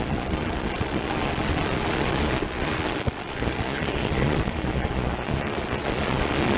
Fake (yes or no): yes